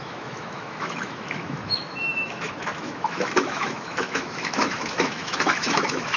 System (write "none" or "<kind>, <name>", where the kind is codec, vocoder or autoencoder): autoencoder, DAC-VAE